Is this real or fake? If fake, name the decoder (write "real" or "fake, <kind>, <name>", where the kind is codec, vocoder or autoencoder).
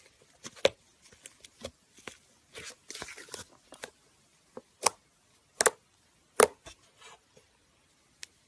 real